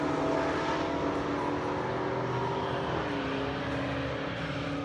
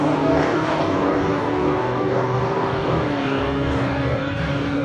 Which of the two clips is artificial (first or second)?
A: second